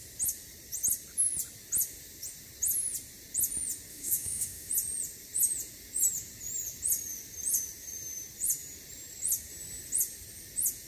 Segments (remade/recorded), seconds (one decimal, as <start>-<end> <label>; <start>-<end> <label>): 0.0-3.9 recorded; 3.9-4.7 remade; 4.7-10.9 recorded

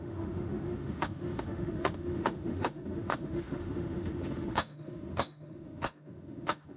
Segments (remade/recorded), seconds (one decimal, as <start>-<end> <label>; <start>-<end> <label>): 0.0-6.8 remade

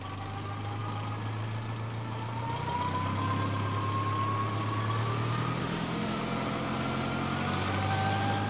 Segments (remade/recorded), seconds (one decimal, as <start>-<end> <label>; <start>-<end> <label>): 0.0-5.6 recorded; 5.6-6.2 remade; 6.2-8.5 recorded

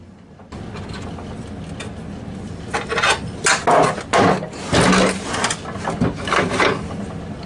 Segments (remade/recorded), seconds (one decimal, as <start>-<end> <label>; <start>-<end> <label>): 0.0-7.5 recorded